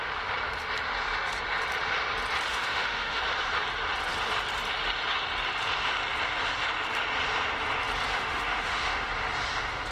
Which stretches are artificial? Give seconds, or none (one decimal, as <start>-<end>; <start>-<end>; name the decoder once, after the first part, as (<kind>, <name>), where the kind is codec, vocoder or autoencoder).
2.5-3.2 (autoencoder, DAC-VAE); 8.1-9.1

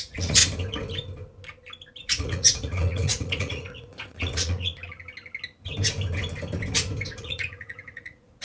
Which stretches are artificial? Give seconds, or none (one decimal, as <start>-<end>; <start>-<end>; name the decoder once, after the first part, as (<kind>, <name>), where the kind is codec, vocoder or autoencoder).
0.0-0.4 (vocoder, Vocos); 2.0-4.8; 7.2-8.4

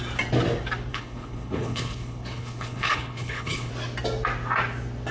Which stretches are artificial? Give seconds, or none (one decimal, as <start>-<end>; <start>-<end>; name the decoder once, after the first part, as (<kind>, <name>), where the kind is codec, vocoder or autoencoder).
0.9-3.7 (codec, HILCodec)

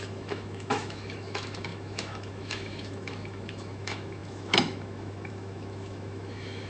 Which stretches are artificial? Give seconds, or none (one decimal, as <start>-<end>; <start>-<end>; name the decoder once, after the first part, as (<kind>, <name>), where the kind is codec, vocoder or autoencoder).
0.0-6.7 (autoencoder, DAC-VAE)

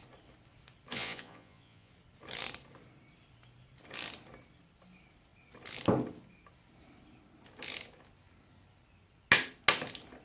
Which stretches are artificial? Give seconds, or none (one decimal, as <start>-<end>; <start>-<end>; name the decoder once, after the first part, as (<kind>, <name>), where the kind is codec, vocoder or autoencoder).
0.9-1.9 (vocoder, Vocos)

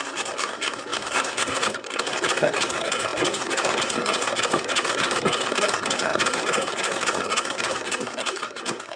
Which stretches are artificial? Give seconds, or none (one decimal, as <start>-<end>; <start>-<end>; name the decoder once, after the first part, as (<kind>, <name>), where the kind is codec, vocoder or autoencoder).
0.0-9.0 (codec, SNAC)

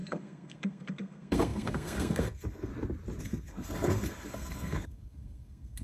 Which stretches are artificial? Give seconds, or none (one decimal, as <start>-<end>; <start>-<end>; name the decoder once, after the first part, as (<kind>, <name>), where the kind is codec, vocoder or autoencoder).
0.0-2.7 (codec, SNAC); 3.2-5.8